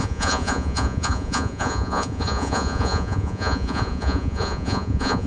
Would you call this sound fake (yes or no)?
yes